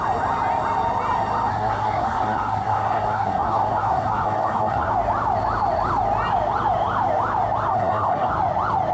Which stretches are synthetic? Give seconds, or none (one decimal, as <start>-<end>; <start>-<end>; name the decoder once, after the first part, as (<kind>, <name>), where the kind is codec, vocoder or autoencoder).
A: 1.5-4.9 (codec, SNAC); 7.7-8.3